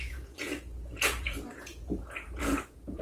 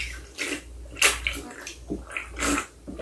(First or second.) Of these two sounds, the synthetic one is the first